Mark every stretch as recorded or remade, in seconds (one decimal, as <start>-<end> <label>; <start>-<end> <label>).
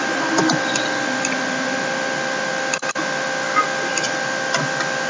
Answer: 0.0-5.1 recorded